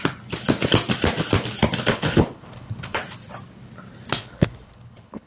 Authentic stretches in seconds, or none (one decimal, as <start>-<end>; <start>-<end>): 0.0-1.9; 3.0-4.2